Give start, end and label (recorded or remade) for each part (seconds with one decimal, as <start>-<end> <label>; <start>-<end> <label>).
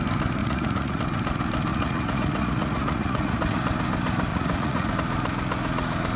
0.0-0.4 recorded; 0.4-1.0 remade; 1.0-1.7 recorded; 1.7-3.5 remade; 3.5-4.3 recorded; 4.3-4.9 remade; 4.9-6.2 recorded